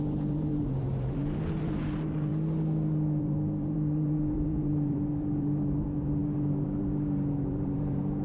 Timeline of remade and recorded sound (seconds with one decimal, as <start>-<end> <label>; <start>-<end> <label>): 0.0-2.3 remade; 2.3-3.2 recorded; 3.2-8.2 remade